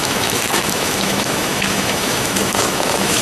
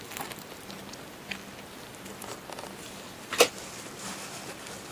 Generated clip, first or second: first